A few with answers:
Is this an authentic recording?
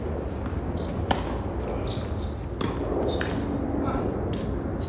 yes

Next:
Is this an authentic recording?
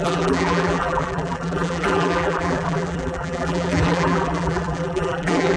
no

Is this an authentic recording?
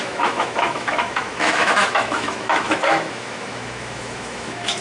no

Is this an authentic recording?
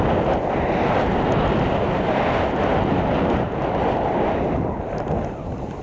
yes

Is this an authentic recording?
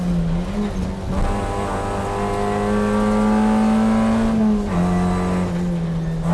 yes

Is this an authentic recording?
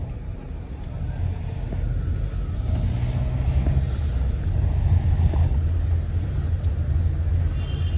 yes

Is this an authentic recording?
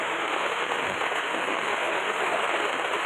no